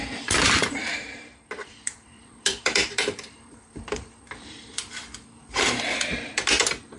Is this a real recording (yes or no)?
no